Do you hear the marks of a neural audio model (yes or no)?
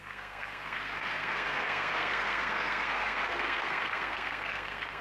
yes